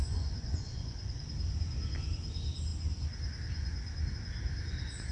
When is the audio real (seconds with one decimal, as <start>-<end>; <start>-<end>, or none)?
1.2-5.1